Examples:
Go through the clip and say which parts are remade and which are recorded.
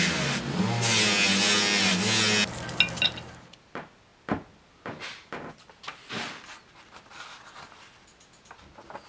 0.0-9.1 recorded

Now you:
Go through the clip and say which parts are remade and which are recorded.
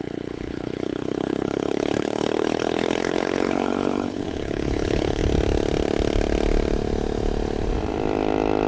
0.0-5.2 remade; 5.2-8.7 recorded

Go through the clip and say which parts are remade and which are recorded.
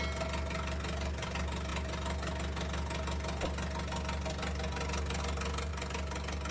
0.0-6.5 recorded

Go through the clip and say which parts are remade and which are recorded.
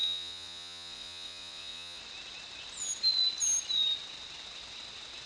0.0-2.0 remade; 2.0-5.3 recorded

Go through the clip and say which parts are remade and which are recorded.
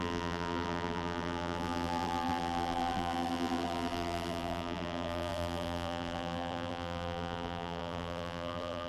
0.0-8.9 remade